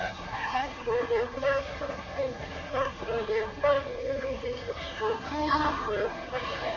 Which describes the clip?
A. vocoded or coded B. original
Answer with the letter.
A